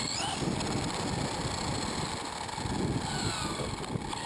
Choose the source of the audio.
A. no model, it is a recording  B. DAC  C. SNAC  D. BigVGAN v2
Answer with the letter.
A